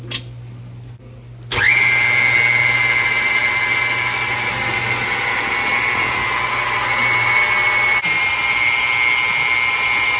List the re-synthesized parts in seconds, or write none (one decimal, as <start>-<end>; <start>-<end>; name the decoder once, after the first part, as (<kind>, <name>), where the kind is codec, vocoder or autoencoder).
none